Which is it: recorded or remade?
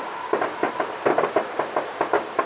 recorded